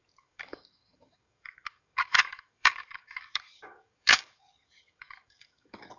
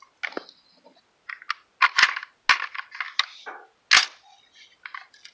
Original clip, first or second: second